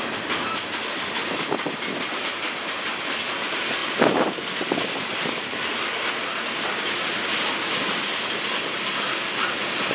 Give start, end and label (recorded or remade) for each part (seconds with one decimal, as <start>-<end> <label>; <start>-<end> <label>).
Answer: 0.0-9.9 recorded